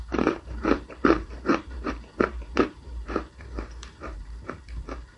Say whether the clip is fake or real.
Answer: fake